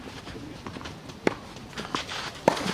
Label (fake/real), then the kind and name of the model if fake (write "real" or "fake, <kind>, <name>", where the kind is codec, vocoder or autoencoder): real